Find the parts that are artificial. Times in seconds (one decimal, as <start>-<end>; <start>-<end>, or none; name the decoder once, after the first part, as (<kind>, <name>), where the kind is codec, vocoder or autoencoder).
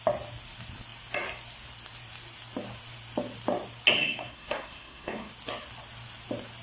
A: 3.9-5.3 (codec, SNAC)